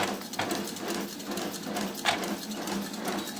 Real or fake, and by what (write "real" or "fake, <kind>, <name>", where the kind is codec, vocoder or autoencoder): real